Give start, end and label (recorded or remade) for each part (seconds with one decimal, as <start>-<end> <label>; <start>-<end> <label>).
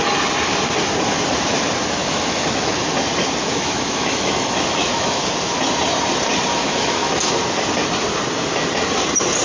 0.0-2.0 recorded; 2.0-2.7 remade; 2.7-3.4 recorded; 3.4-5.2 remade; 5.2-6.5 recorded; 6.5-7.4 remade; 7.4-9.4 recorded